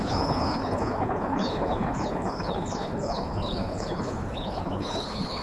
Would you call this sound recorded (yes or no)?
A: no